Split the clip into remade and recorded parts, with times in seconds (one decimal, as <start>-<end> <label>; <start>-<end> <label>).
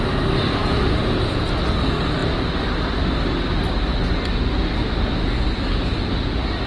0.0-0.6 recorded; 0.6-1.6 remade; 1.6-6.7 recorded